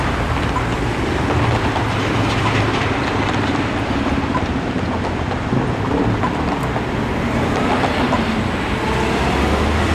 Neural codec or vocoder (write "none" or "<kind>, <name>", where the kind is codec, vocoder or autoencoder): none